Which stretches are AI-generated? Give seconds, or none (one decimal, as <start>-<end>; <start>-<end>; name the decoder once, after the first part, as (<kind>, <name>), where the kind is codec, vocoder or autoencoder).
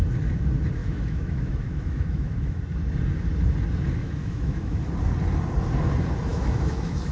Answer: 0.8-2.6 (autoencoder, DAC-VAE); 4.0-4.8; 6.3-7.1